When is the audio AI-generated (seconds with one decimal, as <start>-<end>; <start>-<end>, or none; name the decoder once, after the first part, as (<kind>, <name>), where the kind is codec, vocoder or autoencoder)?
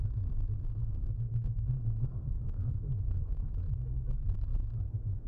0.7-3.5 (codec, SNAC)